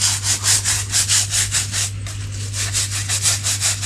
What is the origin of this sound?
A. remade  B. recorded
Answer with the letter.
B